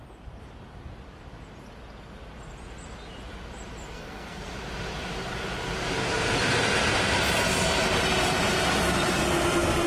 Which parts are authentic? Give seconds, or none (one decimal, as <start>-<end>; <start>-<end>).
0.0-3.9; 4.5-9.9